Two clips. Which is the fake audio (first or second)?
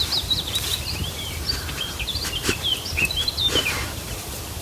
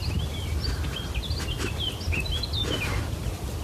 first